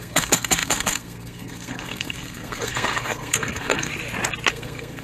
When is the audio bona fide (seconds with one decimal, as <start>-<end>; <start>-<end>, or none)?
3.9-4.5